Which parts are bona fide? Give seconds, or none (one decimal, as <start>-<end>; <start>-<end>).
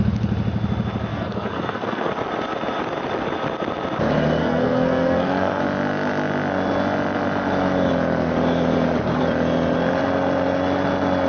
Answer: 0.0-1.1; 2.1-4.4; 5.6-11.3